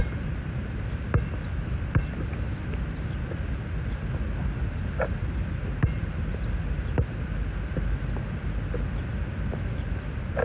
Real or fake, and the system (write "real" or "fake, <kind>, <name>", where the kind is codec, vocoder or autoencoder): real